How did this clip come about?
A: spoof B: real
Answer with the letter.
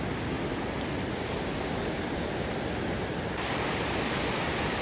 B